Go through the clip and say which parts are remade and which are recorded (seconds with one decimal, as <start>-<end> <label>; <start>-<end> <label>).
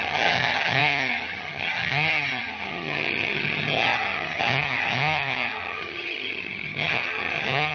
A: 0.0-7.7 remade